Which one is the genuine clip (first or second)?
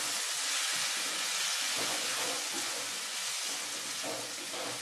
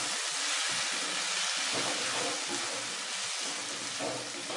second